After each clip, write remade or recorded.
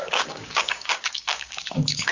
remade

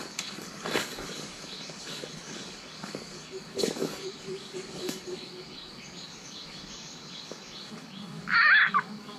remade